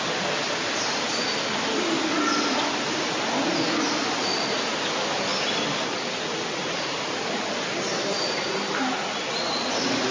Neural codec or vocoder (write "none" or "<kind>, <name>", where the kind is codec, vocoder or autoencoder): none